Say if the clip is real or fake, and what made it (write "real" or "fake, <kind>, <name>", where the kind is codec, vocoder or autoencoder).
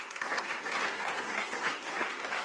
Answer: fake, codec, SNAC